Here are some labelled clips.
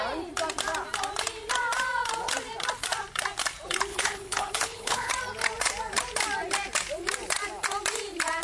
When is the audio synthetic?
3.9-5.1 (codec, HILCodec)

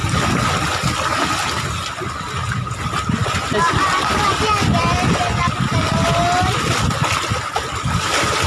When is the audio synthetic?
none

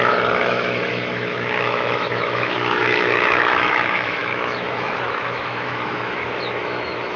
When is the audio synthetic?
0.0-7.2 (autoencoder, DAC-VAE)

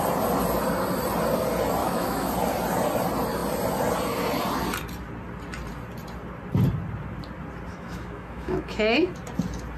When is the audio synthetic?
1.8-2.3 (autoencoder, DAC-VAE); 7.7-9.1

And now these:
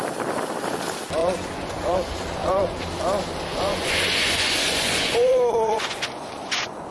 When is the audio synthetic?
1.2-2.8 (vocoder, Vocos); 3.5-6.9